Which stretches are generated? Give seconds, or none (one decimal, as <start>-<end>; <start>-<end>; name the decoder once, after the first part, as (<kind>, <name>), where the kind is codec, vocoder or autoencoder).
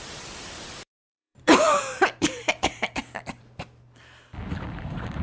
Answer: 0.0-3.0 (vocoder, BigVGAN v2); 4.7-5.2